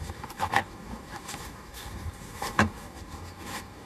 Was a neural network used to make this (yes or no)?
yes